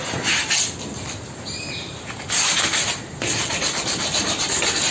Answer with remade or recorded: recorded